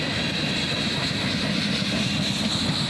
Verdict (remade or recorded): recorded